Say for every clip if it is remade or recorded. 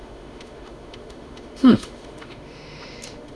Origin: remade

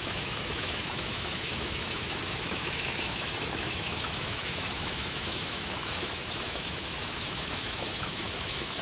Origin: remade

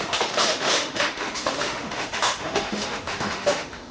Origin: remade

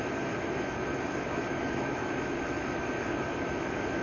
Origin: remade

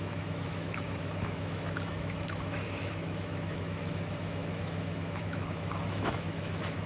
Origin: remade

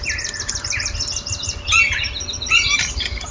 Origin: recorded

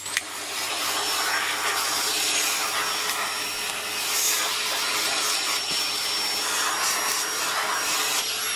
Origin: recorded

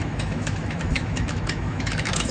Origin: remade